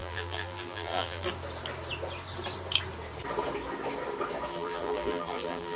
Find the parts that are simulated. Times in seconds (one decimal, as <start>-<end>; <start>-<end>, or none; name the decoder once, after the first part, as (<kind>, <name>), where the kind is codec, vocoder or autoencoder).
0.0-1.3 (vocoder, BigVGAN v2); 4.5-5.8